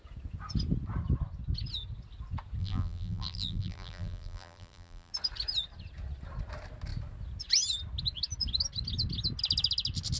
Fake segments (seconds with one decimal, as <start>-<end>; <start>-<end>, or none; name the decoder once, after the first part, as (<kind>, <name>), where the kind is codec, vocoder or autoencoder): 2.6-5.1 (vocoder, BigVGAN v2)